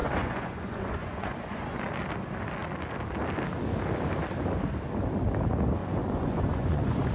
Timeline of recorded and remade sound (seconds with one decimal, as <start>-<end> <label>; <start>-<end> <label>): 0.0-1.8 remade; 1.8-5.8 recorded; 5.8-7.1 remade